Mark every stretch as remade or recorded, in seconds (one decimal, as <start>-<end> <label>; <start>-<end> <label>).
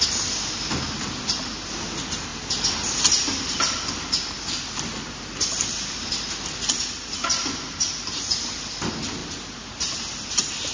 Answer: 0.0-10.7 recorded